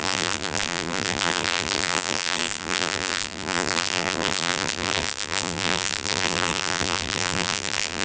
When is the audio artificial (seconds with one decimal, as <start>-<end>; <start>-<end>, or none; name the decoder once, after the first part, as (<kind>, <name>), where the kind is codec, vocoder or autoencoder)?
0.0-8.0 (vocoder, BigVGAN v2)